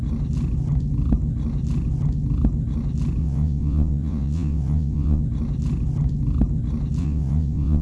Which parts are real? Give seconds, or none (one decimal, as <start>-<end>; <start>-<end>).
0.0-3.2; 5.2-7.0